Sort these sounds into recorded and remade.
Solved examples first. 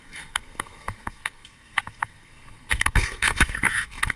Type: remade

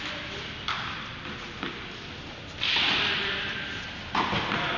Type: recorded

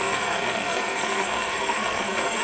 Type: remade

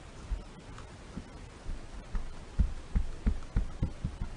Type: recorded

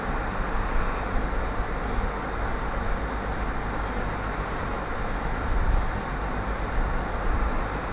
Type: recorded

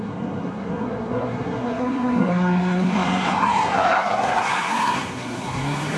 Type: remade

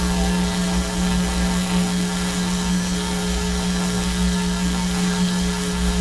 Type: remade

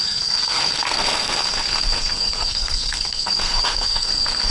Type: remade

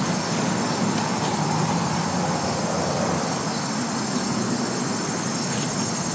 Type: recorded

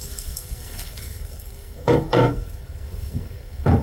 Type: remade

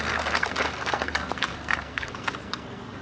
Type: remade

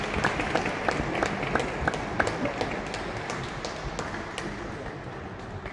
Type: recorded